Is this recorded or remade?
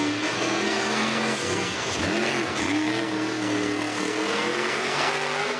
remade